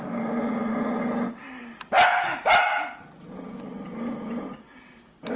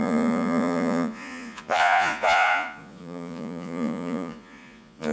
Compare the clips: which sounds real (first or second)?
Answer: first